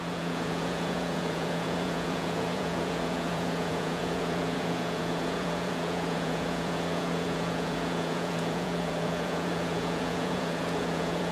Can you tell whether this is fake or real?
fake